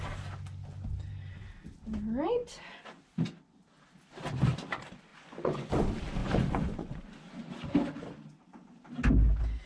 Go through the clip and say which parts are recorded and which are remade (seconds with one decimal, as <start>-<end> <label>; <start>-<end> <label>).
0.0-5.1 recorded; 5.1-5.7 remade; 5.7-6.2 recorded; 6.2-7.0 remade; 7.0-9.7 recorded